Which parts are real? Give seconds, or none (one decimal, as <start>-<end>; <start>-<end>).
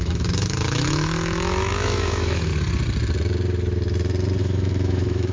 2.5-4.4